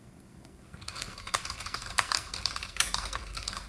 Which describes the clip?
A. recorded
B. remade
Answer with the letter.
B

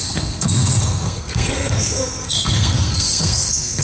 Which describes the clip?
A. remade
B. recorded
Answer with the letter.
A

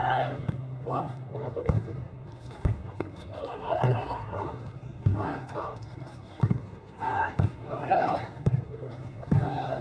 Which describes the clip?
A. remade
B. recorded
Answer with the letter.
A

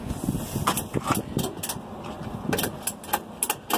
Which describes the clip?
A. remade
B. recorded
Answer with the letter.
B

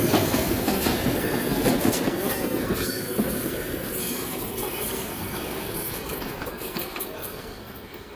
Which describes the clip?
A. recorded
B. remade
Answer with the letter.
B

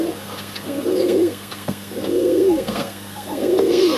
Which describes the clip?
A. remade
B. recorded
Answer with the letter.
A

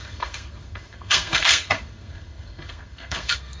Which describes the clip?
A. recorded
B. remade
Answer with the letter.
B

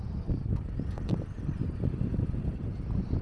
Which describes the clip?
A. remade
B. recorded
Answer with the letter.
B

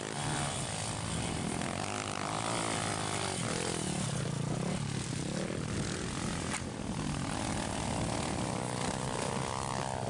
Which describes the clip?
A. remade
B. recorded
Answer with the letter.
B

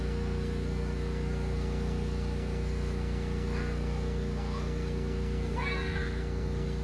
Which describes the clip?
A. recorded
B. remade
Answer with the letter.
B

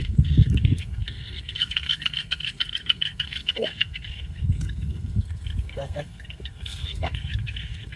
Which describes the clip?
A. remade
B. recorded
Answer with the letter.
A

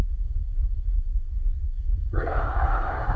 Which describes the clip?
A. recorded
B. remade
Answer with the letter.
B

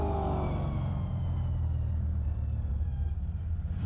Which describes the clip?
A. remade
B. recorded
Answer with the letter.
B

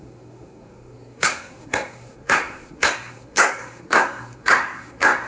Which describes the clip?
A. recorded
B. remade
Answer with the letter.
B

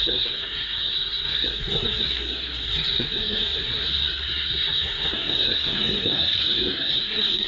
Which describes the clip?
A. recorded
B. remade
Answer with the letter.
B